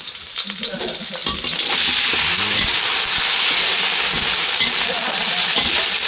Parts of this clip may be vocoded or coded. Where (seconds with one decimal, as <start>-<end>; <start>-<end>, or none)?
none